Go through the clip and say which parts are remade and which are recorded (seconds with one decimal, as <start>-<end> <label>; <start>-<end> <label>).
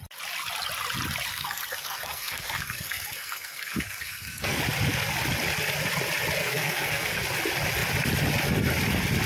0.0-1.3 recorded; 1.3-4.6 remade; 4.6-6.4 recorded; 6.4-7.2 remade; 7.2-9.3 recorded